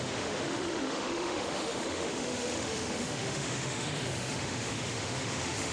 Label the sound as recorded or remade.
remade